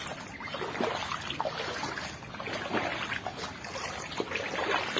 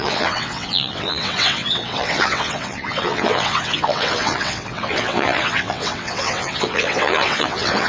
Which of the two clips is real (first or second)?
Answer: first